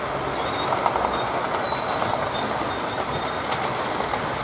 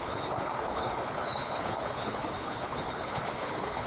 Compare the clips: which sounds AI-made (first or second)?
second